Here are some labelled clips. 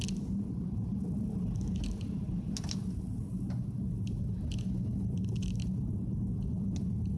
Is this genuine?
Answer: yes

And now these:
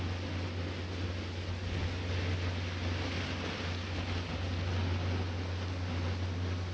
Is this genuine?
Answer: yes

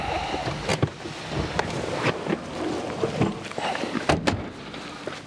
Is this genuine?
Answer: yes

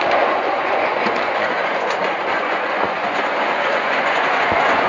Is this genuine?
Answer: no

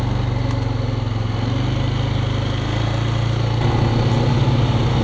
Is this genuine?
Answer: yes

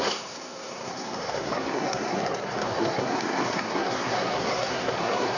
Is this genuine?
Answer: no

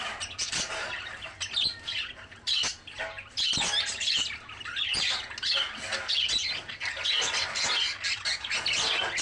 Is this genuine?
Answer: yes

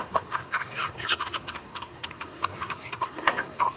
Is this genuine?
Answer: no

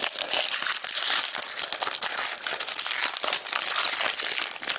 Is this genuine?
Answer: yes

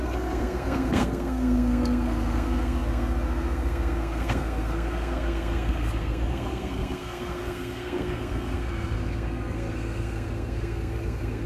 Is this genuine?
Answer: no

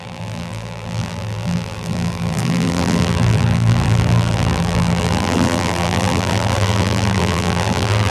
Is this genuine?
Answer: no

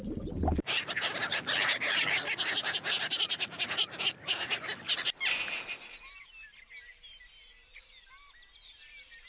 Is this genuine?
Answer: yes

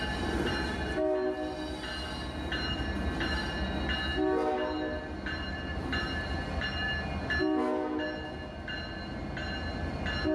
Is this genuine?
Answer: yes